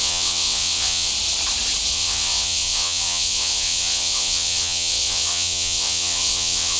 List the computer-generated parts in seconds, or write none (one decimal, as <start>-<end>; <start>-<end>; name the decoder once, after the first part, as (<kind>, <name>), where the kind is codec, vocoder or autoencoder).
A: 0.0-1.1 (vocoder, WaveNeXt); 1.9-6.8